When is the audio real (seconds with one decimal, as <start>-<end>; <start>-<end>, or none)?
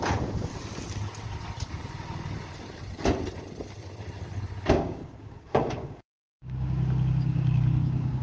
0.5-4.7